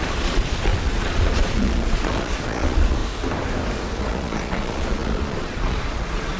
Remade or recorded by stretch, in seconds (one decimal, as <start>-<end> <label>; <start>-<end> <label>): 0.0-3.0 remade; 3.0-4.0 recorded; 4.0-6.4 remade